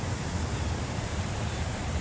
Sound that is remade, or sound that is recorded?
recorded